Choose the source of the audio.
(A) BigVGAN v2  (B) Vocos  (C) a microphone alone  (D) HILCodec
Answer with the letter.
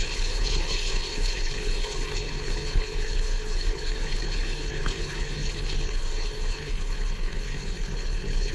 D